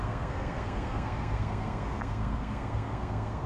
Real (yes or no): no